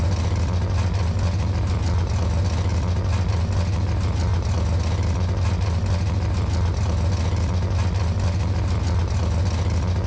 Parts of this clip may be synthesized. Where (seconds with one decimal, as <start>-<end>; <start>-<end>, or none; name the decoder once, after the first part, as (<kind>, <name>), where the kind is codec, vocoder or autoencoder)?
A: none